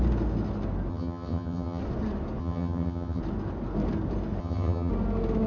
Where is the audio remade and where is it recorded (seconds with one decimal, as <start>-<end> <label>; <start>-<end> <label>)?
0.0-0.9 recorded; 0.9-1.8 remade; 1.8-2.4 recorded; 2.4-3.2 remade; 3.2-4.4 recorded; 4.4-4.9 remade; 4.9-5.5 recorded